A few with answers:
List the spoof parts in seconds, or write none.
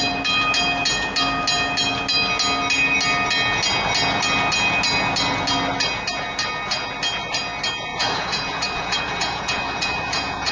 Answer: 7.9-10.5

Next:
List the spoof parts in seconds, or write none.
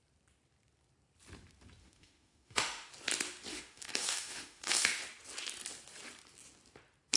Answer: 1.8-2.9; 3.5-5.0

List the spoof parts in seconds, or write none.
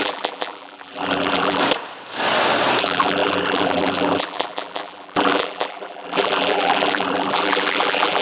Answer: 0.0-1.6; 2.8-8.2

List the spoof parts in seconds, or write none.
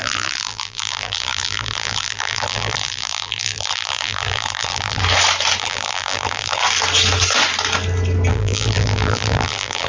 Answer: 0.0-5.0; 5.6-6.6; 8.3-9.9